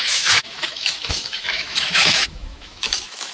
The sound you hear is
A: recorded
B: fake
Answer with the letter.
B